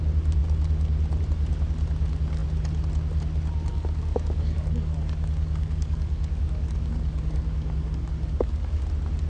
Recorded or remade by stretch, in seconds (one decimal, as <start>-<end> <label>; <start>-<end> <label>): 0.0-3.7 recorded; 3.7-8.8 remade; 8.8-9.3 recorded